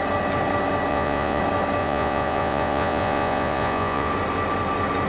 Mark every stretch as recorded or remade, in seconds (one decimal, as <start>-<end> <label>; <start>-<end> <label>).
0.0-0.9 recorded; 0.9-1.4 remade; 1.4-1.8 recorded; 1.8-4.1 remade; 4.1-5.1 recorded